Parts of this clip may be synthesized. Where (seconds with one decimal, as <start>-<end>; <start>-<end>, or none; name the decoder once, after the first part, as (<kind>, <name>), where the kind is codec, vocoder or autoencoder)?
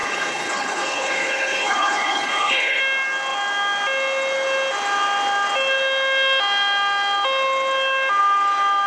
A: 0.0-2.8 (codec, HILCodec)